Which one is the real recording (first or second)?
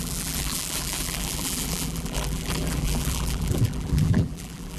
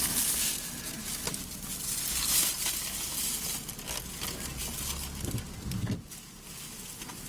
second